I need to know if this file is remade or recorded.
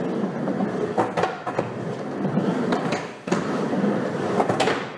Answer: recorded